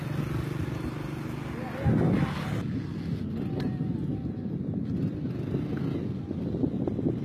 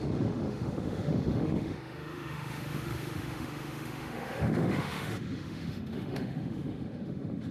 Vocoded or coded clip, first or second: second